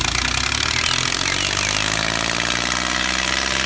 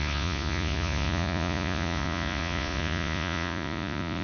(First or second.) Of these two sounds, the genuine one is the first